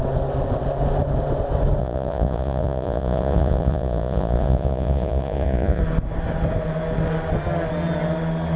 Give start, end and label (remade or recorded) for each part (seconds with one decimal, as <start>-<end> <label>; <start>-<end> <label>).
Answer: 0.0-1.8 recorded; 1.8-5.8 remade; 5.8-8.6 recorded